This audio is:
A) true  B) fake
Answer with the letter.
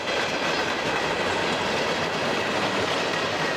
A